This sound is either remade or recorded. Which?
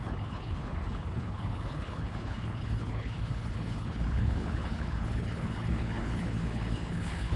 remade